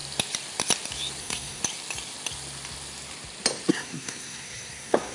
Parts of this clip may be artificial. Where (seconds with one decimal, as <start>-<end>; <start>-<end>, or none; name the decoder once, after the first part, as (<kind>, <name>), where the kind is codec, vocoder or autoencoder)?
1.2-1.6 (codec, SNAC); 3.7-5.1